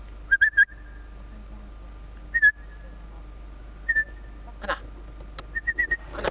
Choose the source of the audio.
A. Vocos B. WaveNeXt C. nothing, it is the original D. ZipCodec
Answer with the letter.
C